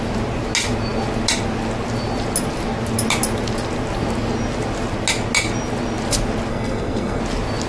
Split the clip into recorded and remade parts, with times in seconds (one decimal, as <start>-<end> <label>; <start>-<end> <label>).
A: 0.0-6.5 recorded; 6.5-7.2 remade; 7.2-7.7 recorded